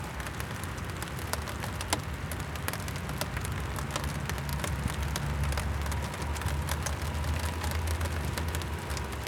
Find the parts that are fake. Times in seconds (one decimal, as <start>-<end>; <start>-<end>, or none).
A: none